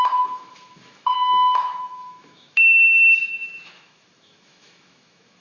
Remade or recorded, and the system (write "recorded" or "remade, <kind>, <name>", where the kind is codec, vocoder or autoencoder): remade, autoencoder, DAC-VAE